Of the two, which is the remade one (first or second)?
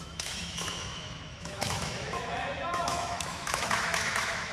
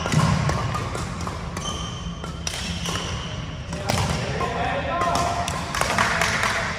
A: first